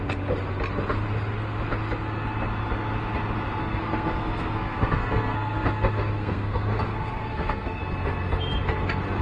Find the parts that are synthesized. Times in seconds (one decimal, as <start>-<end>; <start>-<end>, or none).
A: 3.6-7.8